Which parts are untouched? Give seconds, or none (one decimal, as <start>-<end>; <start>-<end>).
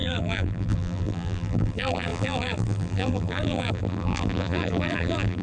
none